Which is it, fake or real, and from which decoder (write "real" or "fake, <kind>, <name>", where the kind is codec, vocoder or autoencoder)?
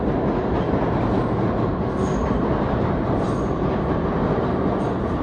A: real